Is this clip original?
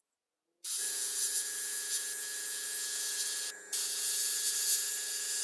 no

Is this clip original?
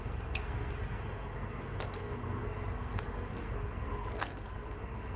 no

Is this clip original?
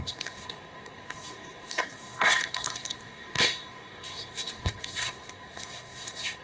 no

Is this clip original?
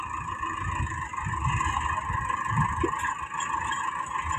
yes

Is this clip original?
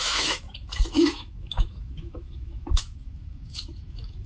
no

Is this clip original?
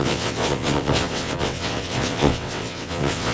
no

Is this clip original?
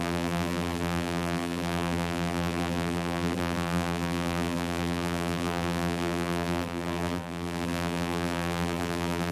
no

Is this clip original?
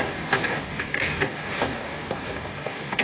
no